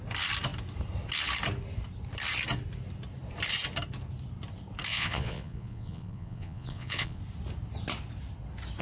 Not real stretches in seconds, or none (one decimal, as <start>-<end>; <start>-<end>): 4.9-7.2